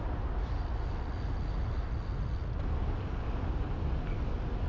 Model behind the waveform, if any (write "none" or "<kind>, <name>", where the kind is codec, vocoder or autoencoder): none